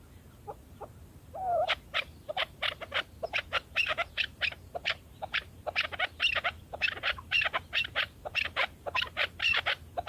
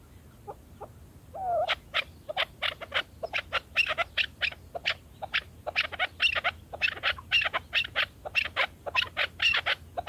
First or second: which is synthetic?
first